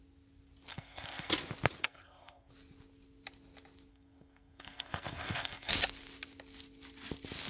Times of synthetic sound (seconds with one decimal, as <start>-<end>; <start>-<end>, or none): 0.7-1.3; 1.8-2.5; 3.9-5.7

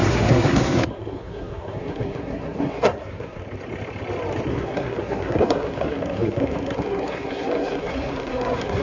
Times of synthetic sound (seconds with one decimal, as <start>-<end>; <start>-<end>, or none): 0.0-3.4; 4.5-8.8

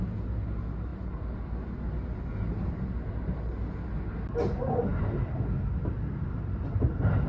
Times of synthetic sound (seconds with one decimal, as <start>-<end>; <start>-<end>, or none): none

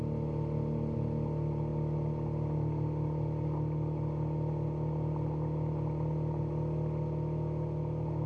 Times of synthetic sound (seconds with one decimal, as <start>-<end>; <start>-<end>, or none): none

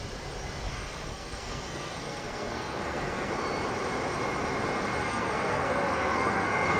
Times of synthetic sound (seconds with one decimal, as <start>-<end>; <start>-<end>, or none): 0.7-3.3; 5.0-6.8

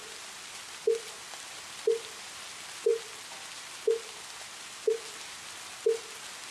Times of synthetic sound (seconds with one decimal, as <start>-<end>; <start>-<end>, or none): none

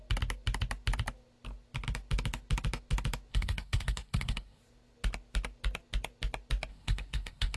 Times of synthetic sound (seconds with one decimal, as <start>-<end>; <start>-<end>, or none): 3.3-4.6; 6.7-7.6